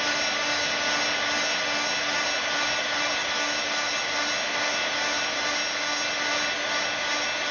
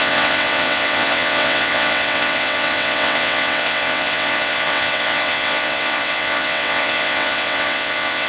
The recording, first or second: first